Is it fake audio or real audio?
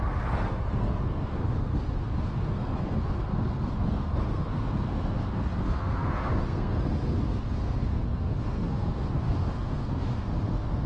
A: fake